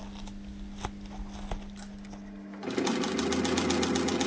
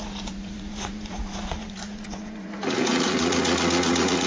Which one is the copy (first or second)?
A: second